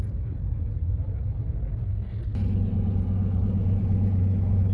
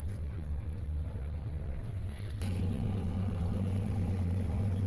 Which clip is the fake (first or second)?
second